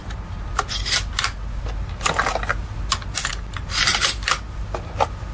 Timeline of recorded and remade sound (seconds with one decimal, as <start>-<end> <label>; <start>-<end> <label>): 0.0-5.3 recorded